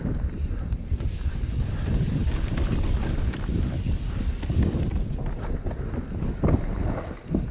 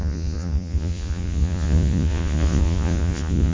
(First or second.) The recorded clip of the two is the first